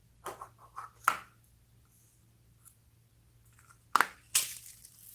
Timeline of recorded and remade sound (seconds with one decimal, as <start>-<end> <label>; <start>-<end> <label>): 0.0-5.1 recorded